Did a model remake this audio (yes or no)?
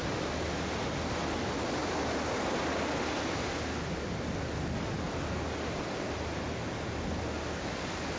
no